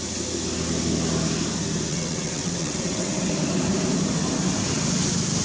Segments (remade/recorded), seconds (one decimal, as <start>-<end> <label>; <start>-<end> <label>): 0.0-1.9 recorded; 1.9-3.3 remade; 3.3-5.4 recorded